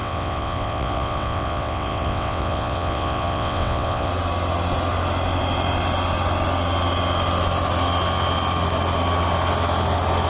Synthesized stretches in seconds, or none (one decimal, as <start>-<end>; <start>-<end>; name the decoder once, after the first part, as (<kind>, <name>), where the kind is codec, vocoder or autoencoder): 0.0-4.1 (vocoder, WaveNeXt)